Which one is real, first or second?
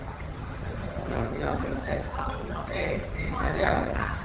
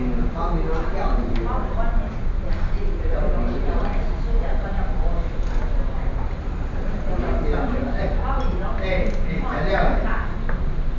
second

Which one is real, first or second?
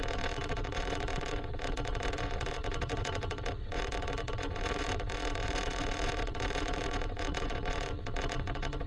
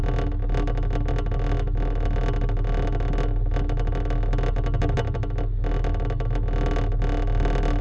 second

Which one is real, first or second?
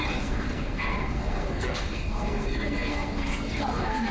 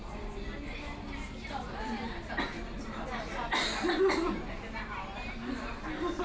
second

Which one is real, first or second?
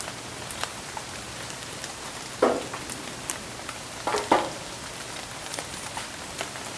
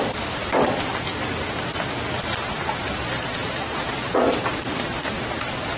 first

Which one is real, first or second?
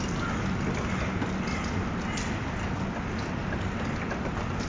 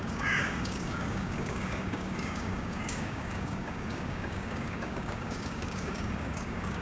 first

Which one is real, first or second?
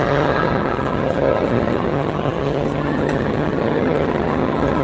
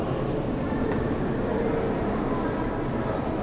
second